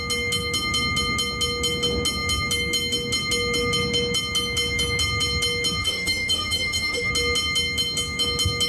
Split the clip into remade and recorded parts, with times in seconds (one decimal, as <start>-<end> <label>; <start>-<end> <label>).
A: 0.0-5.8 recorded; 5.8-7.1 remade; 7.1-8.7 recorded